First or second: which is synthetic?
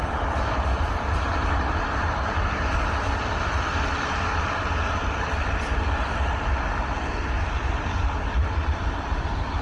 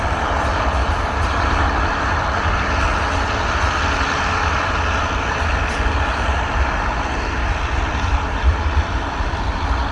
first